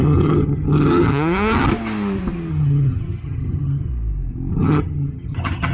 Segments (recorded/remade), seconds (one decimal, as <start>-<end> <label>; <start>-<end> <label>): 0.0-1.7 remade; 1.7-2.5 recorded; 2.5-3.9 remade; 3.9-4.5 recorded; 4.5-5.7 remade